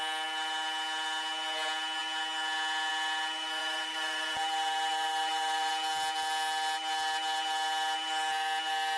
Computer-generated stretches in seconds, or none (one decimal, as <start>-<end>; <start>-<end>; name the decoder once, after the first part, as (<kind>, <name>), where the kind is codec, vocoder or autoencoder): 3.6-5.7 (vocoder, BigVGAN v2)

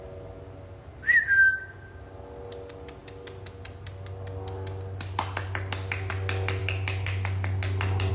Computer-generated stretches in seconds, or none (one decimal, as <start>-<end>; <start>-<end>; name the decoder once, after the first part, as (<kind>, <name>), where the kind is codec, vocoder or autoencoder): none

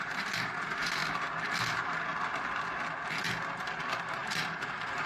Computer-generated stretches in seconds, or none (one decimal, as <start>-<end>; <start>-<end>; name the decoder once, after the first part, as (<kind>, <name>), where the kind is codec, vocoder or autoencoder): 0.0-1.0 (vocoder, BigVGAN v2); 1.6-2.1; 3.8-5.1

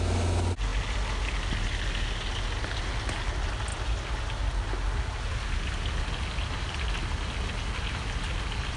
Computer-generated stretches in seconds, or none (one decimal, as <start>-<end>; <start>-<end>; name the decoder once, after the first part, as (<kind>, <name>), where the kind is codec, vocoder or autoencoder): none